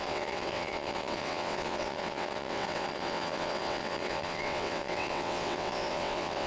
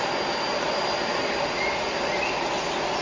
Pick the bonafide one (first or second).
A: second